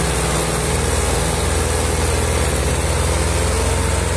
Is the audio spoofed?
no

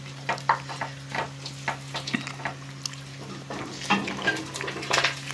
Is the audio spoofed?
no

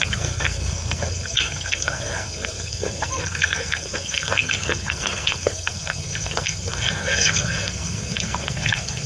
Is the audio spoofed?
yes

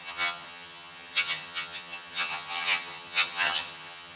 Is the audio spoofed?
yes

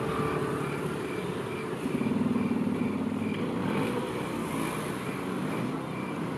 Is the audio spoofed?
no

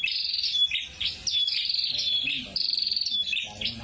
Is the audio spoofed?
no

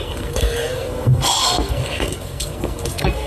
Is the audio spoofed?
yes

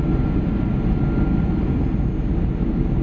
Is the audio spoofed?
no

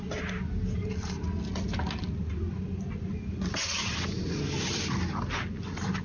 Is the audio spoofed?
no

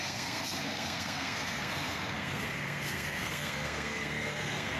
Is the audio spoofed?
yes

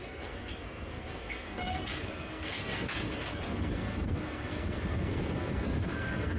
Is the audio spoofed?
yes